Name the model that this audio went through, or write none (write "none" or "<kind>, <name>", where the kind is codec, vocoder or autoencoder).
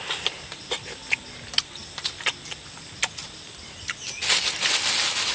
none